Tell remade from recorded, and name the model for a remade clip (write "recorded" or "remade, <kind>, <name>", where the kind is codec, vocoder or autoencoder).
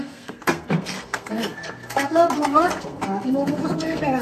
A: remade, codec, SNAC